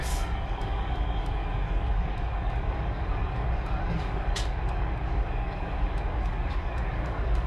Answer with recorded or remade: remade